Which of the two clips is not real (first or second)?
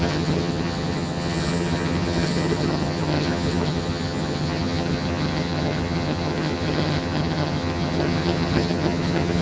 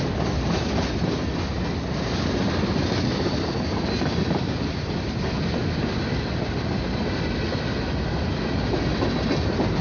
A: first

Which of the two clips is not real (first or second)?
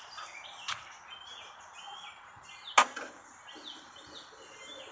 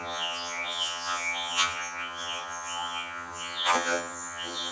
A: second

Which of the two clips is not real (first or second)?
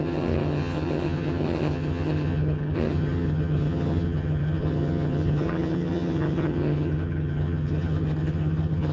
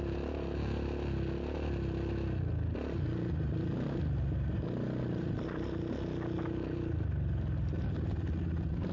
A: first